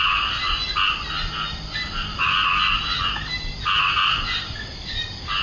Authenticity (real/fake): real